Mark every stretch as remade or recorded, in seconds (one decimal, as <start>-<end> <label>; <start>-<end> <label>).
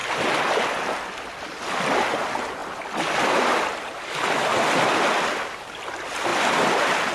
0.0-7.1 recorded